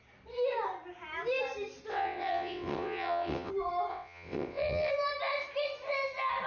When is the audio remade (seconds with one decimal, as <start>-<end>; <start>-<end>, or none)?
1.9-3.5; 3.9-4.9